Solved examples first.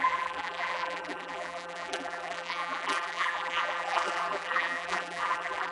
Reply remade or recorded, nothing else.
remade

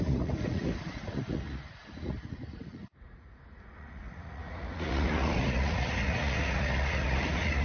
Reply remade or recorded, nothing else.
remade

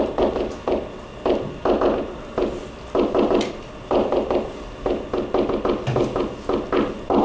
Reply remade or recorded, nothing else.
recorded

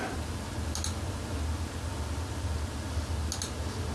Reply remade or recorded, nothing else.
recorded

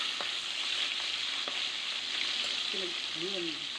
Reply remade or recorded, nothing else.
recorded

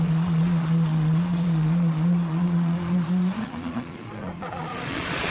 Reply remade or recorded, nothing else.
remade